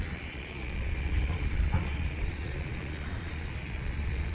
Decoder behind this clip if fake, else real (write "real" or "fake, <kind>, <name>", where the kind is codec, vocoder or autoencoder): fake, vocoder, Vocos